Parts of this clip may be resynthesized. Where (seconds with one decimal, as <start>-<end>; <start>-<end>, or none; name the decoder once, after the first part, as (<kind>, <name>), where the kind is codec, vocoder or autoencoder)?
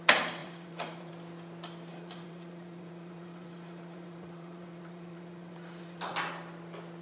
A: 0.4-1.1 (vocoder, Vocos); 1.9-6.1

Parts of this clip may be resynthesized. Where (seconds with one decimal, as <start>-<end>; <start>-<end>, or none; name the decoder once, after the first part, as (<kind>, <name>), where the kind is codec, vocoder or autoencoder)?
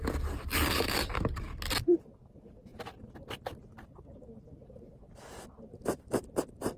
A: none